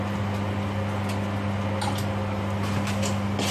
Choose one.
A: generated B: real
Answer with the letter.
B